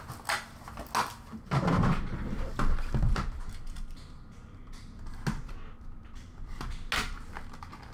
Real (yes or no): yes